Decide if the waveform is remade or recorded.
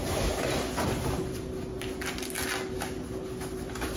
recorded